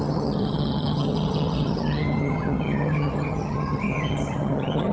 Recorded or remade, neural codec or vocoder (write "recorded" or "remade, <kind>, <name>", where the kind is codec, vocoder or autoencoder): remade, vocoder, HiFi-GAN